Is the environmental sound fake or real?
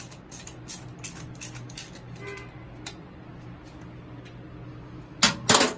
real